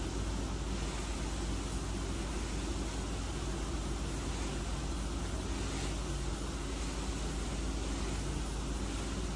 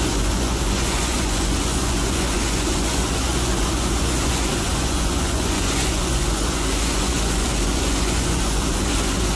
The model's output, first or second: second